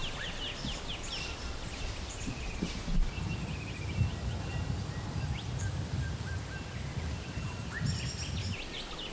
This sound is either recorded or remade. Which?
recorded